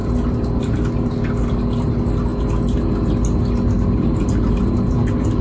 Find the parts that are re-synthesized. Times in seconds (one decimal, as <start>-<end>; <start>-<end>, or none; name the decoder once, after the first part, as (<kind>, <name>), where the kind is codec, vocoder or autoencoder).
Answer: 0.0-0.7 (vocoder, BigVGAN v2)